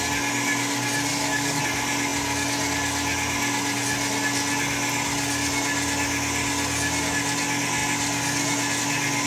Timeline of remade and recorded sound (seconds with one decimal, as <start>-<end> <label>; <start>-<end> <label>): 0.0-1.1 recorded; 1.1-1.6 remade; 1.6-9.3 recorded